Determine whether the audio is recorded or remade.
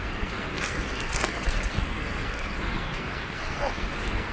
remade